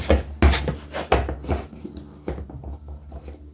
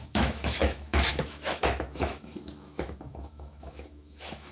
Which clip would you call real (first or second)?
first